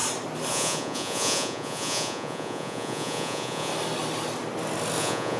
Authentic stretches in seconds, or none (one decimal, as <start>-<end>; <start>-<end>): 0.0-0.5; 3.7-5.0